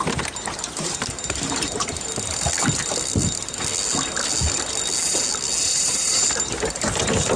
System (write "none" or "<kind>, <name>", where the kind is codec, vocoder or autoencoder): none